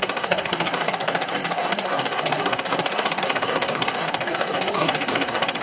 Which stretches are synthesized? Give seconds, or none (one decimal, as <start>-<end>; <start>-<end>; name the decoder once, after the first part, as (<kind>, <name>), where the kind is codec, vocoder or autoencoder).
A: 0.0-5.6 (codec, SNAC)